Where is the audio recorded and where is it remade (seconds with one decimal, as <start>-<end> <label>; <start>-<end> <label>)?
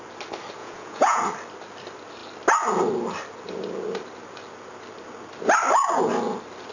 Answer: 0.0-0.6 recorded; 0.6-1.2 remade; 1.2-6.7 recorded